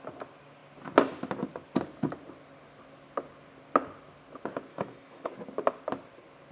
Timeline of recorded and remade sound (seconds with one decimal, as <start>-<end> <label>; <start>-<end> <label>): 0.0-4.7 recorded; 4.7-5.3 remade; 5.3-6.5 recorded